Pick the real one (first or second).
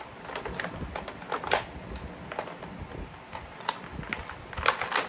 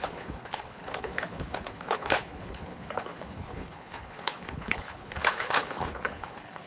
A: first